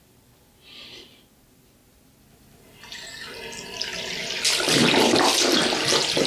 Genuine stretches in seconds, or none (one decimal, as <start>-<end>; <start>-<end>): 0.0-6.3